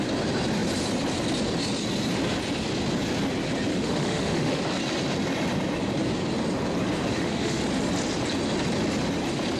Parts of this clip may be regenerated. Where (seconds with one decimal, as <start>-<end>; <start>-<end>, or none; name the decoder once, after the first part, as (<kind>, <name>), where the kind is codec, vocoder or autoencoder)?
3.7-4.6 (autoencoder, DAC-VAE); 7.1-7.6